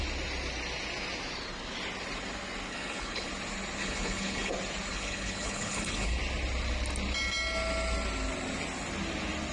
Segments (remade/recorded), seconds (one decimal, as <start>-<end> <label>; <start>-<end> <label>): 0.0-2.7 recorded; 2.7-3.3 remade; 3.3-3.8 recorded; 3.8-4.5 remade; 4.5-4.9 recorded; 4.9-6.2 remade; 6.2-9.5 recorded